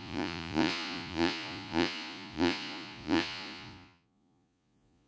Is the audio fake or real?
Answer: fake